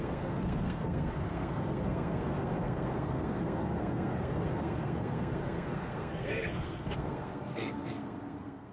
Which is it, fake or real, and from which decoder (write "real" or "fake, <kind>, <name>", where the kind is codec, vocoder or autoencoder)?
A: fake, codec, SNAC